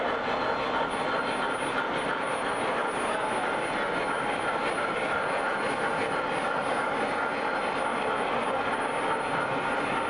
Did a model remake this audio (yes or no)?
no